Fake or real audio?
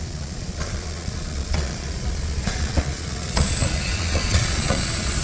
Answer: fake